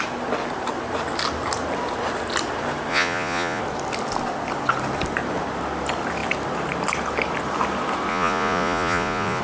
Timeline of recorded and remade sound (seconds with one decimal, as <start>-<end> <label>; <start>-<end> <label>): 0.0-2.9 recorded; 2.9-3.6 remade; 3.6-8.1 recorded; 8.1-9.4 remade